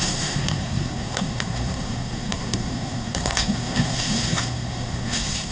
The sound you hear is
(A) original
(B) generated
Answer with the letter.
B